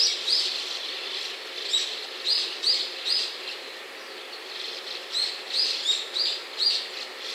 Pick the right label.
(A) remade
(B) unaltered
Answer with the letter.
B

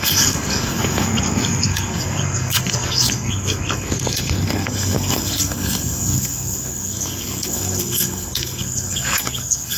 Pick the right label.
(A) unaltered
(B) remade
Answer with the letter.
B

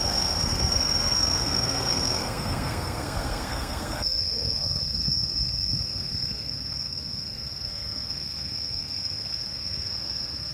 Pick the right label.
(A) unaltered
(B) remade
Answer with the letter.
B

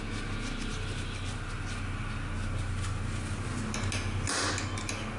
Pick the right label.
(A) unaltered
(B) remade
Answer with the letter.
A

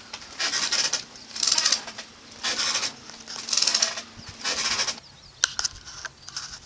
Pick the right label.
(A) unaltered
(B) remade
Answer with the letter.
A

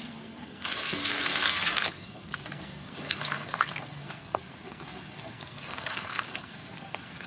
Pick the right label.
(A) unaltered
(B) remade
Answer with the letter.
B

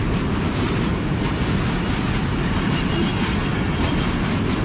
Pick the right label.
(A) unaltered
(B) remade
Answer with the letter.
A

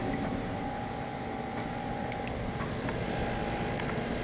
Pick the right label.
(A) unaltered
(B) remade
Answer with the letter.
A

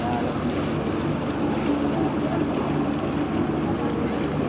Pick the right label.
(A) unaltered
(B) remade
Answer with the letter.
A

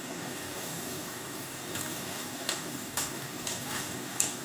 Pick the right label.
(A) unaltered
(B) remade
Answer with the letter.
B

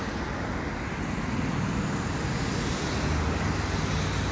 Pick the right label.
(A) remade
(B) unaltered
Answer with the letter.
B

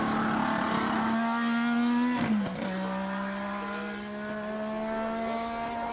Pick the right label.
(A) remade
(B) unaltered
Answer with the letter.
B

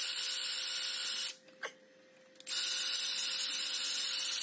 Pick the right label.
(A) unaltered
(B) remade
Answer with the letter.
A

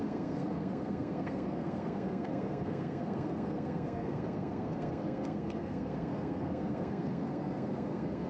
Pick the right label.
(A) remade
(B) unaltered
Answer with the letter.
A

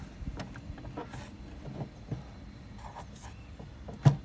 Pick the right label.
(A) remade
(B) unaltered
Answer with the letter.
B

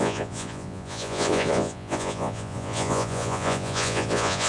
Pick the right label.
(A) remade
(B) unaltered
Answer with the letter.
A